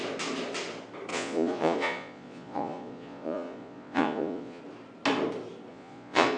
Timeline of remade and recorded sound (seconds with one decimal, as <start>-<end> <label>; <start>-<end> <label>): 0.0-1.1 recorded; 1.1-4.6 remade; 4.6-5.7 recorded; 5.7-6.4 remade

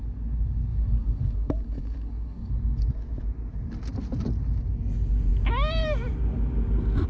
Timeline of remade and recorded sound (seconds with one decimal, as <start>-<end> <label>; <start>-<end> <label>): 0.0-0.7 recorded; 0.7-2.5 remade; 2.5-7.1 recorded

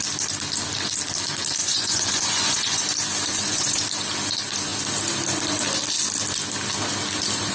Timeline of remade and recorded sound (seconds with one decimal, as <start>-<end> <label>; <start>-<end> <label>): 0.0-1.6 recorded; 1.6-2.8 remade; 2.8-3.3 recorded; 3.3-3.8 remade; 3.8-7.5 recorded